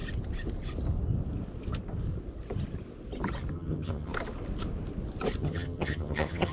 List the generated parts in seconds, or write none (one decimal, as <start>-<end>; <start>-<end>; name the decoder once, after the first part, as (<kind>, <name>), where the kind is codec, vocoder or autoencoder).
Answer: 3.5-4.1 (vocoder, HiFi-GAN); 5.4-6.5